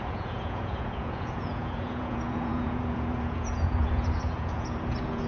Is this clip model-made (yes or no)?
yes